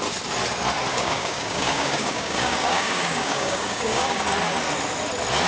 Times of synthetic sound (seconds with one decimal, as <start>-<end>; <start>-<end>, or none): 0.9-4.2